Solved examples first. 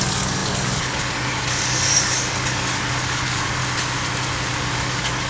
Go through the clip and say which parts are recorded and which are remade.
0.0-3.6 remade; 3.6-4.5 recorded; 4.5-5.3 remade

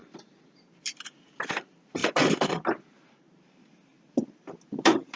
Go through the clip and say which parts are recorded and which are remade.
0.0-5.2 remade

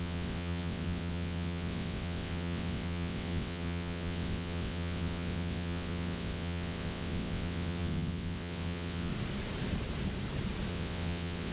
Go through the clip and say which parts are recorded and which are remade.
0.0-9.1 remade; 9.1-10.7 recorded; 10.7-11.5 remade